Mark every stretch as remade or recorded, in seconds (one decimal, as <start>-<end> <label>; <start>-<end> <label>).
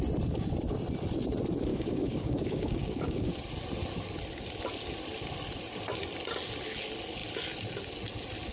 0.0-1.7 recorded; 1.7-3.3 remade; 3.3-8.5 recorded